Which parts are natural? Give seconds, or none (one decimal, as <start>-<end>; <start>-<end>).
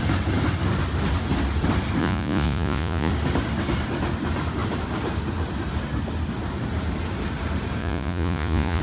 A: 0.0-2.0; 3.1-7.8